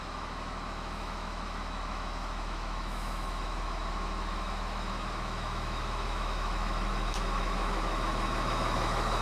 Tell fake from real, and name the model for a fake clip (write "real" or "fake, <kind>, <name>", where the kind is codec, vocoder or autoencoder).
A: fake, autoencoder, DAC-VAE